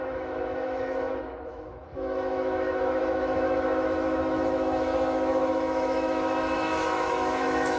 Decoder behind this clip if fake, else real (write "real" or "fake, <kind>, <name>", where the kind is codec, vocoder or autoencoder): fake, autoencoder, DAC-VAE